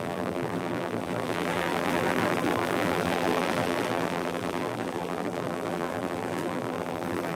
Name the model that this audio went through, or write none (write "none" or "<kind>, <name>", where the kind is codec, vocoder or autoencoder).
vocoder, BigVGAN v2